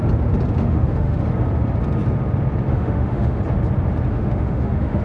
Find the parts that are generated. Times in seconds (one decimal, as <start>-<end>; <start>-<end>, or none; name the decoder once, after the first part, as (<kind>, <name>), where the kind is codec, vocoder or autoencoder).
0.6-1.2 (autoencoder, DAC-VAE); 2.7-3.4; 4.1-5.0